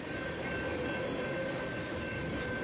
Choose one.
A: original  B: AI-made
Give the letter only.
A